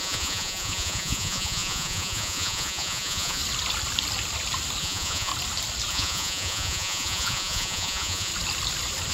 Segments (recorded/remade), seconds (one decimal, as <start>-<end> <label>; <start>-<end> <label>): 0.0-3.4 remade; 3.4-4.8 recorded; 4.8-5.3 remade; 5.3-5.9 recorded; 5.9-8.3 remade; 8.3-9.1 recorded